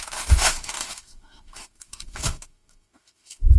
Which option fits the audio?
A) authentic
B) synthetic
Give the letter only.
B